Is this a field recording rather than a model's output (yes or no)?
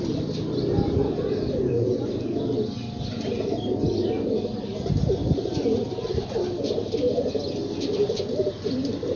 yes